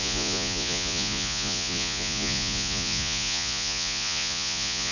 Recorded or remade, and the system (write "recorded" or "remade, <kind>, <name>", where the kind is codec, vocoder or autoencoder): remade, vocoder, Vocos